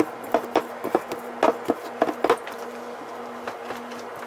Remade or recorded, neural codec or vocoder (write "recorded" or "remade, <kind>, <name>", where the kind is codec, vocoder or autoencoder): recorded